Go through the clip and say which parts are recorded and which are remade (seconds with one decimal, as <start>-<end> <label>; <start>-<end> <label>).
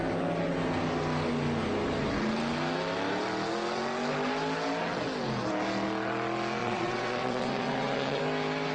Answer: 0.0-6.6 recorded; 6.6-8.2 remade; 8.2-8.7 recorded